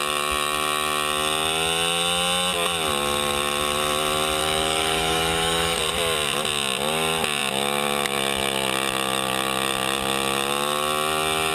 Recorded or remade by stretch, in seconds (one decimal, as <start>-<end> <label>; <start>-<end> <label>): 0.0-4.4 recorded; 4.4-5.8 remade; 5.8-11.5 recorded